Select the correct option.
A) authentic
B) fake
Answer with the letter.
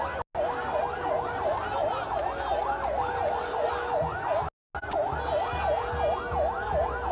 A